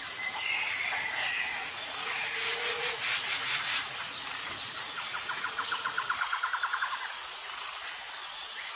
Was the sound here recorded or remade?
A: remade